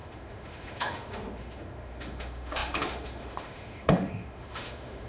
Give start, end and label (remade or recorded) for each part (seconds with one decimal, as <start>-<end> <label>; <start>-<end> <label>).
0.0-5.1 remade